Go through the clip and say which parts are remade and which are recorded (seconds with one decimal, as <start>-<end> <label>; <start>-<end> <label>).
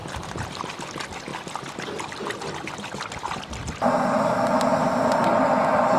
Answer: 0.0-6.0 recorded